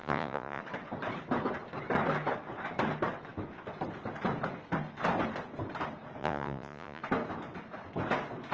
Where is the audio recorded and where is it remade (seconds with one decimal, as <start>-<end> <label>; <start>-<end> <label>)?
0.0-0.6 remade; 0.6-6.2 recorded; 6.2-7.0 remade; 7.0-8.5 recorded